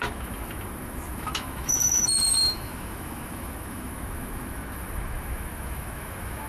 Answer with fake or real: fake